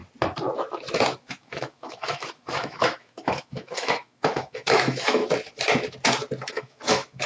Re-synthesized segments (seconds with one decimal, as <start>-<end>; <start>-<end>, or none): 1.2-5.2; 6.5-7.3